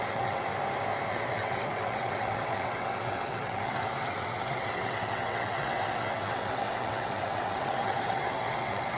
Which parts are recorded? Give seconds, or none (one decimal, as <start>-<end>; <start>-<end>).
0.5-1.1